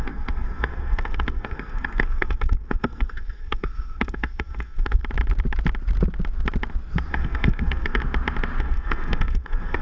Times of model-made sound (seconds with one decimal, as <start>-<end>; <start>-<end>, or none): 0.0-5.0; 7.1-8.0; 8.6-9.8